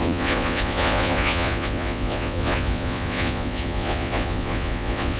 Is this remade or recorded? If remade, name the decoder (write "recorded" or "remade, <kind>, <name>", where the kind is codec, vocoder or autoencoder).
remade, vocoder, Vocos